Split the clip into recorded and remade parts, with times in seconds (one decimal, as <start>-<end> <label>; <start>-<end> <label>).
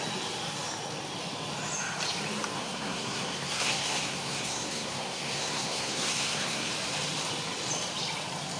0.0-2.6 recorded; 2.6-6.7 remade; 6.7-8.6 recorded